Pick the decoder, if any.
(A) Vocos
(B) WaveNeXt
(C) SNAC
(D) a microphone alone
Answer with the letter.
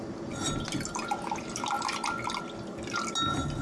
D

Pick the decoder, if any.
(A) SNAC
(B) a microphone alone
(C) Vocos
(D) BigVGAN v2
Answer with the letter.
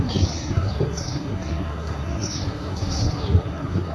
A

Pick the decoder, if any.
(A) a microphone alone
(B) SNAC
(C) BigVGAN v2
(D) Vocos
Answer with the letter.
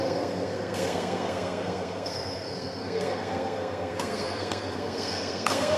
B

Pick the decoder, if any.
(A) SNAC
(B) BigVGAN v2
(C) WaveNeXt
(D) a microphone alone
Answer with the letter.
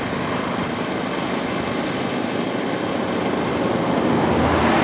D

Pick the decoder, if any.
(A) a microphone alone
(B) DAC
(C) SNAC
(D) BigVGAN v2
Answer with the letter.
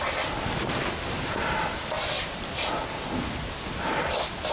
A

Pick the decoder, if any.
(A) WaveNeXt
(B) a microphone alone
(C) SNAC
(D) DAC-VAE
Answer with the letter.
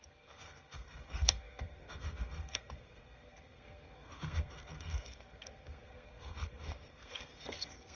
C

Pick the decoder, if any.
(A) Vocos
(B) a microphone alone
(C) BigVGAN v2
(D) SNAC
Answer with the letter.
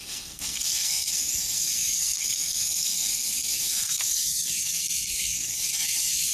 D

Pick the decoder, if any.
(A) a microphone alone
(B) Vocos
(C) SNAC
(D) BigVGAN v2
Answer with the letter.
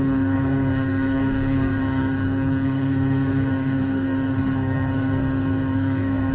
C